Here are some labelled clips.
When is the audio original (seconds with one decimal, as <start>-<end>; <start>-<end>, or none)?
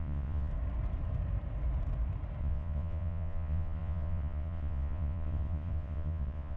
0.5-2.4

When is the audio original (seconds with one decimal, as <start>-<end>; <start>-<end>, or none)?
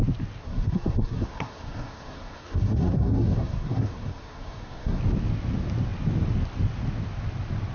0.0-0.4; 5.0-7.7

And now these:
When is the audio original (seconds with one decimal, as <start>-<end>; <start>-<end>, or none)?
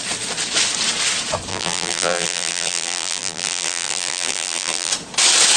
0.0-1.5; 4.9-5.6